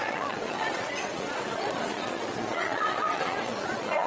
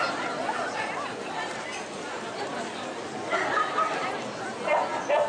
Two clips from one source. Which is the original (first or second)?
second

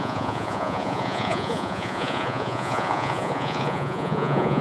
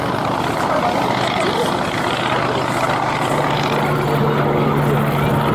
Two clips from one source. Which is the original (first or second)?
second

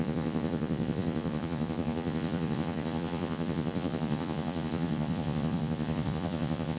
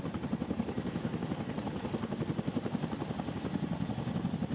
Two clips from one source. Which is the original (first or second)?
second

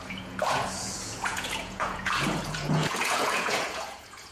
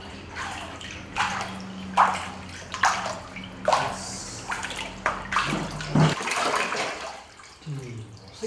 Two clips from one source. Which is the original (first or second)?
second